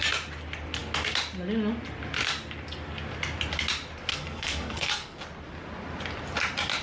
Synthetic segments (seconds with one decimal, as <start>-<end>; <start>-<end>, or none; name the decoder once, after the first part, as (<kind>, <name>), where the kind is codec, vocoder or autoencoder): 4.1-5.2 (codec, SNAC)